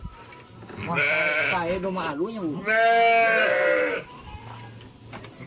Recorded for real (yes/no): yes